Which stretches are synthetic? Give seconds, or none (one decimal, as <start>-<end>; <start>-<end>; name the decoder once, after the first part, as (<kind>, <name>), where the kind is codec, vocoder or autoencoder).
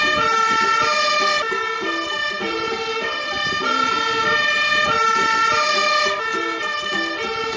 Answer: 0.0-7.6 (vocoder, BigVGAN v2)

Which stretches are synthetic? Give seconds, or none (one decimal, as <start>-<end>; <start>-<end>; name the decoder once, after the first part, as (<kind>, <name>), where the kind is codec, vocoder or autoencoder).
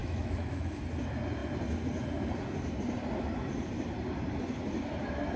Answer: 0.0-0.8 (autoencoder, DAC-VAE)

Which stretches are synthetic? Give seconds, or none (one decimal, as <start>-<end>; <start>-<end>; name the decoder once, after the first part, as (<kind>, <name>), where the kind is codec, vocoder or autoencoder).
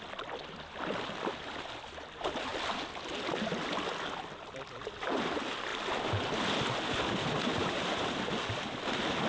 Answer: none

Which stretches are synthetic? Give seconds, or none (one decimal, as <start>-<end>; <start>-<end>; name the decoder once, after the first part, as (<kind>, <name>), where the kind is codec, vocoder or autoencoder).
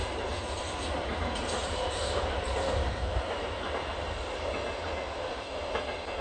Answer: 1.6-3.9 (vocoder, BigVGAN v2)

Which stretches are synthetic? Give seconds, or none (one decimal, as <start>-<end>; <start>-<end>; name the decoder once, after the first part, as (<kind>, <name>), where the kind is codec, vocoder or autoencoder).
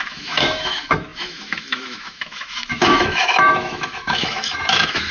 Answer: 0.0-5.1 (autoencoder, DAC-VAE)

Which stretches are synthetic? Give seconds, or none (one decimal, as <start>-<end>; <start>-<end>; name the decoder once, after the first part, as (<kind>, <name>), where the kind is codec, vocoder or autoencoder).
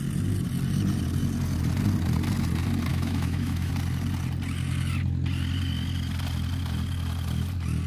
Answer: 2.9-3.7 (autoencoder, DAC-VAE)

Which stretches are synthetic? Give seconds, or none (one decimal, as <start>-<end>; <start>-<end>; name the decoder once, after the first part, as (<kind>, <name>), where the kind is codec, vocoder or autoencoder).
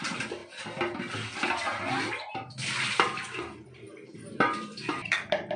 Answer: none